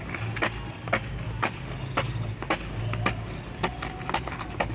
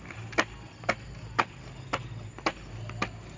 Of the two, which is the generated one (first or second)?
second